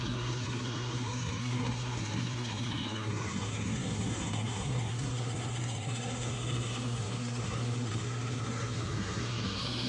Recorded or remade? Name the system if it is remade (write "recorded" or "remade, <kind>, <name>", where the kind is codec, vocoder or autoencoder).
remade, codec, SNAC